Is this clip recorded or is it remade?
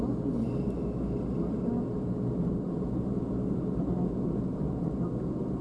recorded